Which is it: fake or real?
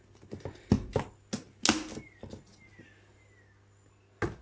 real